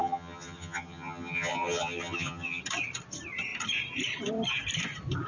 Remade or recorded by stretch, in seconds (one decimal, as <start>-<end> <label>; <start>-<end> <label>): 0.0-2.6 remade; 2.6-5.3 recorded